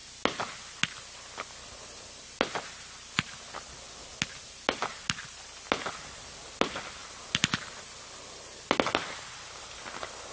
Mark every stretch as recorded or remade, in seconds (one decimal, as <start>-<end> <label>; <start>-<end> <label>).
0.0-10.3 recorded